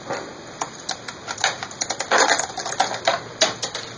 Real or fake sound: real